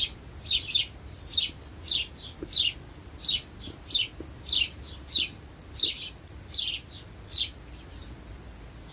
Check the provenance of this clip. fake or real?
real